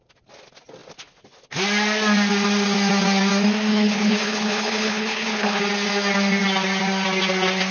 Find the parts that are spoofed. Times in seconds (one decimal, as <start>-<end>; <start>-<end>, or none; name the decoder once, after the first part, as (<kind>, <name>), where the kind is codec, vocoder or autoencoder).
3.7-5.6 (codec, HILCodec)